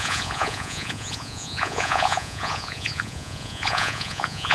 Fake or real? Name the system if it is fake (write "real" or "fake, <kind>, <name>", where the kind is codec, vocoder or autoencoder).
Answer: fake, vocoder, Vocos